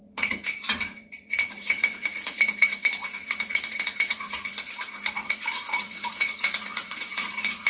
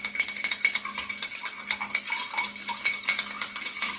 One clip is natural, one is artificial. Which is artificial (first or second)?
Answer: first